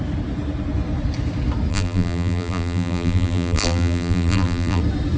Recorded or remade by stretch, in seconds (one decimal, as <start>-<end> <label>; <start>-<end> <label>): 0.0-1.7 recorded; 1.7-4.8 remade; 4.8-5.2 recorded